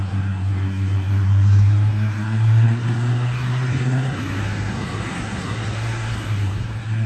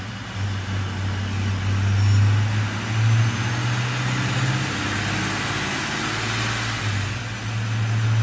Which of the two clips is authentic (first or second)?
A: second